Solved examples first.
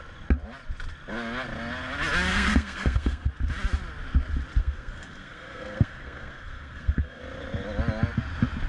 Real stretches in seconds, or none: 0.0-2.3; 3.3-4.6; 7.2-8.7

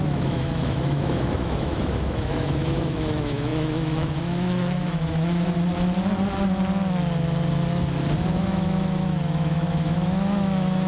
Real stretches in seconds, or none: 5.7-8.4

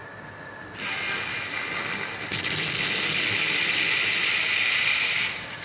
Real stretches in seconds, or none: 0.0-5.6

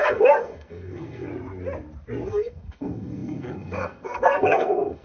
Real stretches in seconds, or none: 1.3-2.3

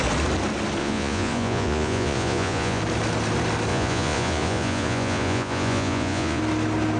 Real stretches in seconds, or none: 0.0-0.8; 2.8-3.7; 6.4-7.0